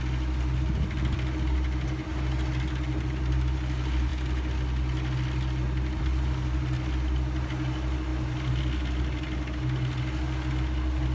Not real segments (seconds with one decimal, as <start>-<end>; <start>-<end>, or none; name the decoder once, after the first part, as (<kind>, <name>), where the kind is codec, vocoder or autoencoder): none